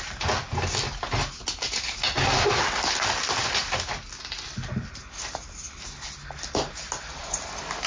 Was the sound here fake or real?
real